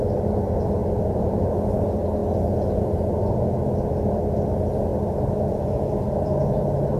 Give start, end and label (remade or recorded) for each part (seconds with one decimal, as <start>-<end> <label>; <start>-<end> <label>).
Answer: 0.0-0.8 recorded; 0.8-1.5 remade; 1.5-7.0 recorded